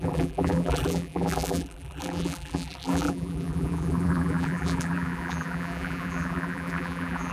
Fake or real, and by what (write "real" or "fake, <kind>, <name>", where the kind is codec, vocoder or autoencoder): fake, vocoder, BigVGAN v2